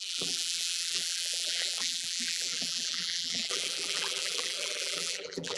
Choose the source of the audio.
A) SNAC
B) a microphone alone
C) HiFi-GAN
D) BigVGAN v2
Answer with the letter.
D